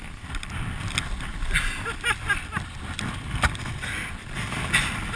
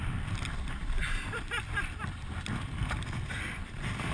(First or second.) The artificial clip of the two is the second